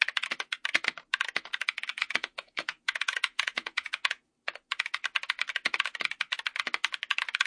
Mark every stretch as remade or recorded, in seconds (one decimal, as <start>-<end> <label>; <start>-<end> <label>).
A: 0.0-1.9 recorded; 1.9-4.3 remade; 4.3-7.5 recorded